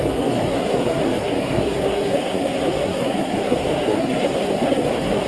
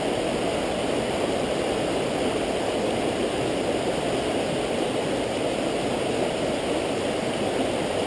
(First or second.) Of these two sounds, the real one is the second